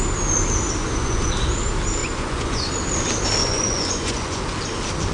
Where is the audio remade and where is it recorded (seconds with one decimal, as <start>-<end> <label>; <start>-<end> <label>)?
0.0-0.8 recorded; 0.8-1.3 remade; 1.3-2.0 recorded; 2.0-2.7 remade; 2.7-3.4 recorded; 3.4-4.4 remade; 4.4-5.1 recorded